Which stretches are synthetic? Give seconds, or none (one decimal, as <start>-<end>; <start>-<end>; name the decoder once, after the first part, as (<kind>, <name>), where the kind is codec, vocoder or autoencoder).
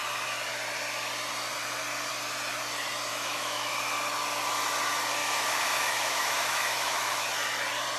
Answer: 3.1-3.7 (autoencoder, DAC-VAE); 5.2-7.2